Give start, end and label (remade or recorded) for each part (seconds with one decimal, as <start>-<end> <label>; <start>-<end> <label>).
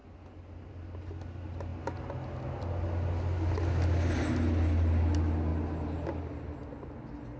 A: 0.0-7.4 recorded